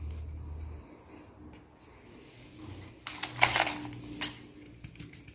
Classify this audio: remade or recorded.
recorded